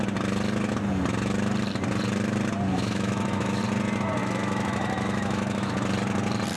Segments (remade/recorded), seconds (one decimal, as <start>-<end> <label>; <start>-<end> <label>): 0.0-2.7 recorded; 2.7-3.6 remade; 3.6-4.2 recorded; 4.2-5.7 remade; 5.7-6.6 recorded